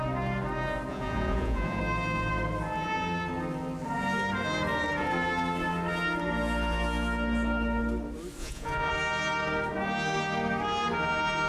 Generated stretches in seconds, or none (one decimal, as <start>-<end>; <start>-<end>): 0.9-1.8; 8.4-8.9